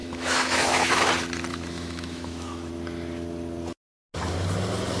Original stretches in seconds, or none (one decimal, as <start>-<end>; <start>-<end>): 1.1-1.5; 2.7-5.0